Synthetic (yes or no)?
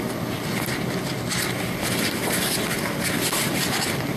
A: no